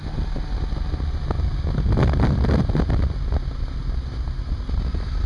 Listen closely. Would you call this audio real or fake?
real